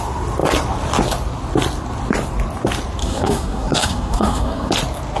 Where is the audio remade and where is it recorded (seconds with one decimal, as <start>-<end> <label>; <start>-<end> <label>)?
0.0-3.0 recorded; 3.0-4.7 remade; 4.7-5.2 recorded